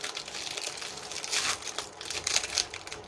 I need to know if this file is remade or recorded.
recorded